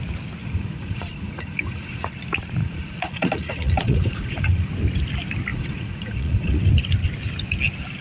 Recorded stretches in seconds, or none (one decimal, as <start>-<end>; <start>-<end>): 0.0-0.4; 2.1-2.6; 4.7-5.5; 6.6-8.0